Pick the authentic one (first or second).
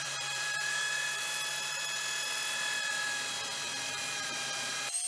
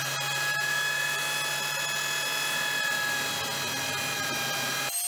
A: second